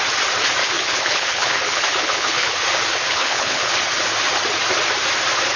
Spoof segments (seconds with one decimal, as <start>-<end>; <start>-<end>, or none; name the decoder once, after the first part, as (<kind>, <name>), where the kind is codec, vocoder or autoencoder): 0.6-2.5 (codec, HILCodec); 3.1-3.7